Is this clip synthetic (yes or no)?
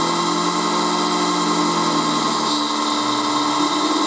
no